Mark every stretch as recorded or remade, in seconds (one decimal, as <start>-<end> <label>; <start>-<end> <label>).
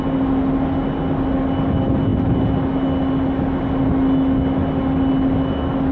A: 0.0-5.9 recorded